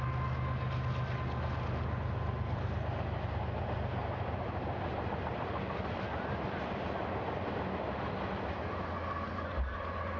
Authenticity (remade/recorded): recorded